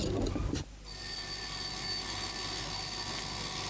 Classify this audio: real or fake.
real